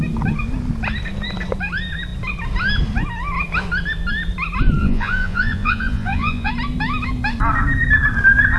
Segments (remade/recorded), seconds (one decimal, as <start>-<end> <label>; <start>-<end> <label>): 0.0-4.8 recorded; 4.8-6.5 remade; 6.5-8.6 recorded